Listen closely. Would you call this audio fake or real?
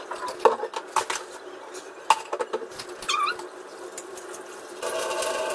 real